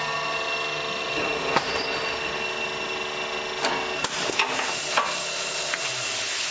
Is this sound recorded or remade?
recorded